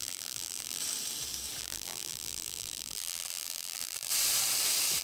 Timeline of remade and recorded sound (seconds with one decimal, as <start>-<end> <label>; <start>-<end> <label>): 0.0-0.8 remade; 0.8-1.6 recorded; 1.6-4.1 remade; 4.1-5.0 recorded